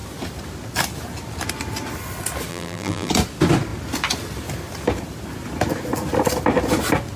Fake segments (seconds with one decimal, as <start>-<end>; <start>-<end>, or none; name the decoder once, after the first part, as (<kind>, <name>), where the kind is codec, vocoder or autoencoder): 2.5-3.1 (vocoder, BigVGAN v2)